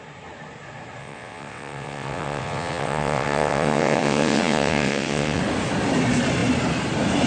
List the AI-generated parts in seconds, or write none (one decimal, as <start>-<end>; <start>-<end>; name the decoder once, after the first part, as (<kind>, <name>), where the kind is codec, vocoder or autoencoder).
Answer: 1.0-5.4 (vocoder, WaveNeXt)